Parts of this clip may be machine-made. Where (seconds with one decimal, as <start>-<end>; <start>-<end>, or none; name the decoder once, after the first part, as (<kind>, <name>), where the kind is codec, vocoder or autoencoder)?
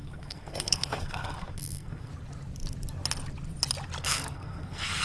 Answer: 0.0-2.1 (codec, SNAC); 4.0-5.0